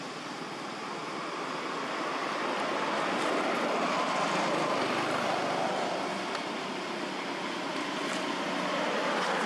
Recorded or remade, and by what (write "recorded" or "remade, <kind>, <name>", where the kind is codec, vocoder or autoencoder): recorded